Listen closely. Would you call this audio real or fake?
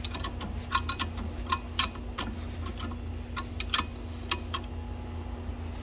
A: real